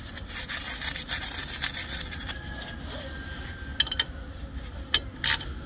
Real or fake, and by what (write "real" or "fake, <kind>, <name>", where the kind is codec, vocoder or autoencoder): real